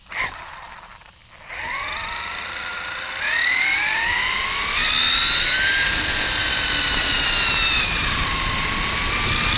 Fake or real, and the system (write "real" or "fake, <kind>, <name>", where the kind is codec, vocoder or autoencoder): real